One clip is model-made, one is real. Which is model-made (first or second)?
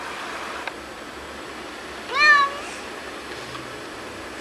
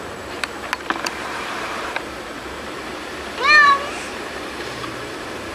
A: second